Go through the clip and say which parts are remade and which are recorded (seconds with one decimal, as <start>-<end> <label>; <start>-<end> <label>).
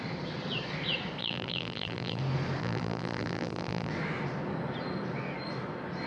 0.0-1.2 recorded; 1.2-2.2 remade; 2.2-2.6 recorded; 2.6-3.9 remade; 3.9-6.1 recorded